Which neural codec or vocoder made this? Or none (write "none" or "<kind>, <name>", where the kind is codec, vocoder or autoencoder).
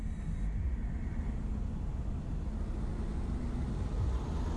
none